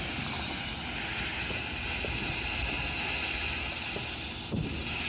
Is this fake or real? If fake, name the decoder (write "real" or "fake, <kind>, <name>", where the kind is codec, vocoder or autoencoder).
real